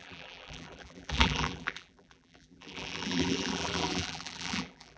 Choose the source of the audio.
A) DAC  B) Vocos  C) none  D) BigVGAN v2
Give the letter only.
D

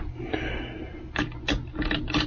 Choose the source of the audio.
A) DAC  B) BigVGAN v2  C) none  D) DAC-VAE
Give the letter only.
C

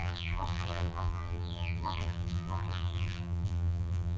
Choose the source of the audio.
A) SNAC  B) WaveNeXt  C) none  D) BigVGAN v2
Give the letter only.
D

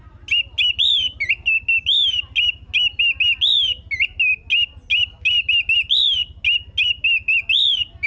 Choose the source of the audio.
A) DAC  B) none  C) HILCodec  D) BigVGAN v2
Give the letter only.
B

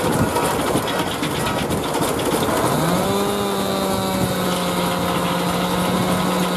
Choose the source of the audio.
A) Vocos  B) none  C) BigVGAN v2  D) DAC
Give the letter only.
B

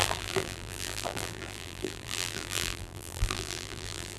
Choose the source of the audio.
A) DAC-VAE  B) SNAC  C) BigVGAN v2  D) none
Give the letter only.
C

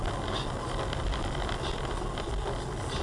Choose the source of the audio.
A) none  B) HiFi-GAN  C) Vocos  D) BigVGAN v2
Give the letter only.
A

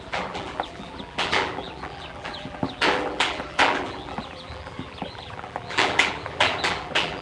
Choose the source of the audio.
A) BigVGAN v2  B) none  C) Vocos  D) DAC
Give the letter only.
A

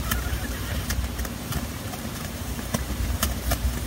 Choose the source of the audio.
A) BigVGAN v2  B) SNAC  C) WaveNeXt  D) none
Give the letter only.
A